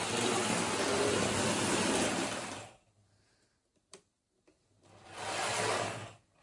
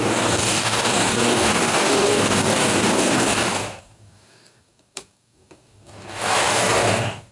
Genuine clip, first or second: first